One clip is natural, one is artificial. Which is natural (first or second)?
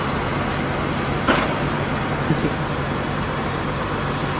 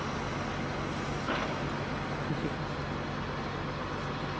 second